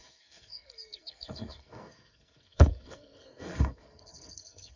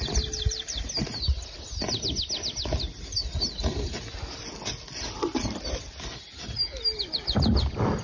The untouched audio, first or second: second